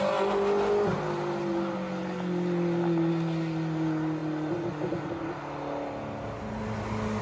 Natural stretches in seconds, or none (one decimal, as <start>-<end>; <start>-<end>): 0.0-7.2